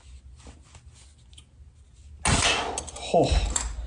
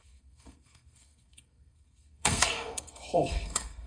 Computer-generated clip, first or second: second